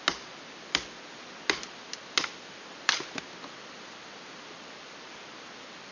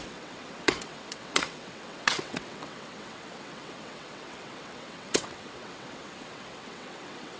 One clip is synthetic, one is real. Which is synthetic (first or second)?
second